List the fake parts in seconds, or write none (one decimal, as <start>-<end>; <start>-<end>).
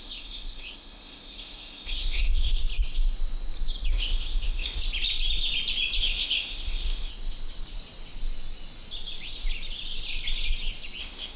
0.0-2.6; 3.9-4.8; 6.0-7.1; 11.0-11.4